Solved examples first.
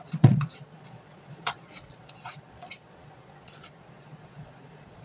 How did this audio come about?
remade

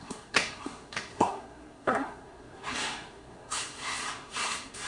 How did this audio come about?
remade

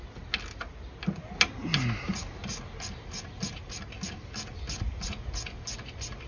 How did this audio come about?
recorded